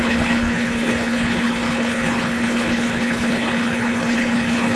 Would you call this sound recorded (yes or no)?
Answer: no